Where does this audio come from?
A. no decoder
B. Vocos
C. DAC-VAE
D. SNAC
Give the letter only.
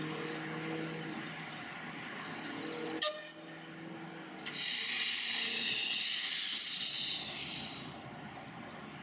A